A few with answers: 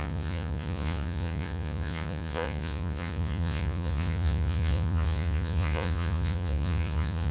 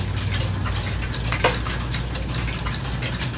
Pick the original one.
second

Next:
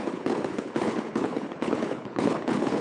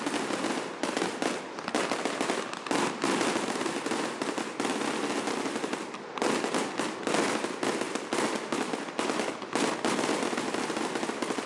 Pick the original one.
second